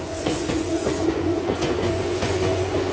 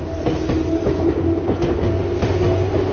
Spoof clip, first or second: first